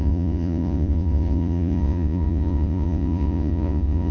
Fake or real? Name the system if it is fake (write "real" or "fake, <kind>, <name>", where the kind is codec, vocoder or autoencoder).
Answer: fake, vocoder, Vocos